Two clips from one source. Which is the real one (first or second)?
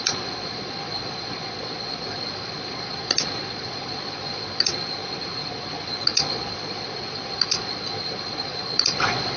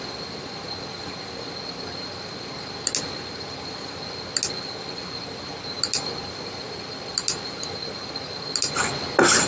second